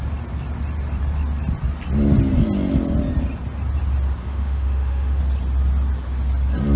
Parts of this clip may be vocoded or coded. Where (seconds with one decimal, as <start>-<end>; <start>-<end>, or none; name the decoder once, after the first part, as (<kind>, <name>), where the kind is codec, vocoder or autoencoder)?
4.2-5.2 (autoencoder, DAC-VAE)

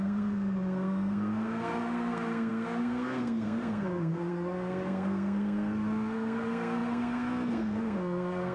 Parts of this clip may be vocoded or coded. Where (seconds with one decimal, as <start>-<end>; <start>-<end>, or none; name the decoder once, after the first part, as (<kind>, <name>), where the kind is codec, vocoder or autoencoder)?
0.0-8.5 (codec, SNAC)

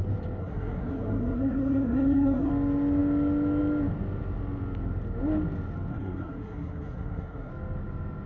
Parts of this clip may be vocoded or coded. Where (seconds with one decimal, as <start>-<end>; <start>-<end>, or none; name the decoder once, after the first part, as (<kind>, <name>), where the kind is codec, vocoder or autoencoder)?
0.4-2.5 (codec, SNAC); 5.9-7.5

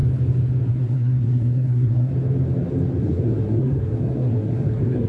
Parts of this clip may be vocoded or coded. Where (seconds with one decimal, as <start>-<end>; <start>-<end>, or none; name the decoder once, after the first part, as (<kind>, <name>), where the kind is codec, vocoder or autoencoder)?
0.7-2.1 (codec, SNAC); 3.0-5.1

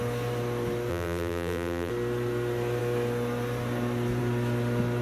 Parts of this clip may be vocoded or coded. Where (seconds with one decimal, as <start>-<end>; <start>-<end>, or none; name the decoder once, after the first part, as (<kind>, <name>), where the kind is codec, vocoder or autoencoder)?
0.9-1.9 (vocoder, BigVGAN v2)